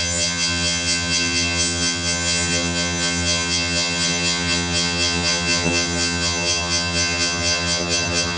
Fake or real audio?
fake